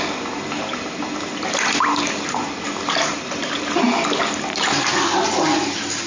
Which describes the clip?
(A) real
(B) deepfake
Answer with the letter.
A